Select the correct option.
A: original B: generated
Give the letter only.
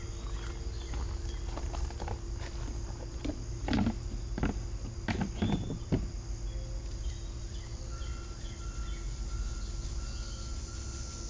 A